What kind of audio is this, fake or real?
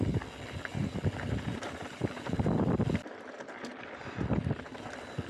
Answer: fake